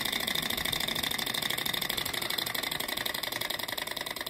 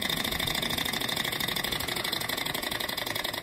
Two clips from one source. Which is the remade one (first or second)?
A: second